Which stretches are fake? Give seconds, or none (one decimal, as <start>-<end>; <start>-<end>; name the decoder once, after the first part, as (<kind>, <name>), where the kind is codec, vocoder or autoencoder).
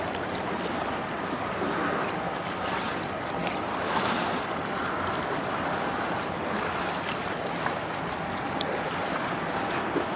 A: none